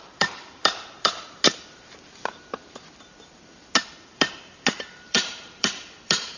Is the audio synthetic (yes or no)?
yes